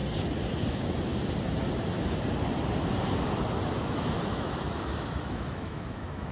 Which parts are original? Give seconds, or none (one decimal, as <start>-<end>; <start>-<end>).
0.0-3.8